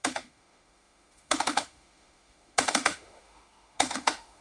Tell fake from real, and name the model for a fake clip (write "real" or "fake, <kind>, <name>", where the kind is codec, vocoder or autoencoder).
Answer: fake, autoencoder, DAC-VAE